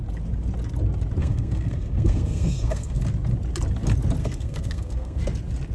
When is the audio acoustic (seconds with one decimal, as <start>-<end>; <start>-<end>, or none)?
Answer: 0.0-1.2; 3.0-4.2; 5.2-5.7